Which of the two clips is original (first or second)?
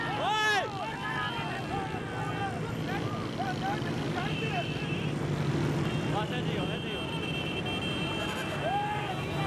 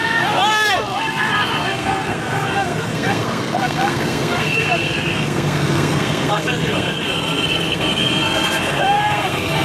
first